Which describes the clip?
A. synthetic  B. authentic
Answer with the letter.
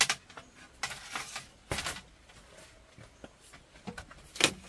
B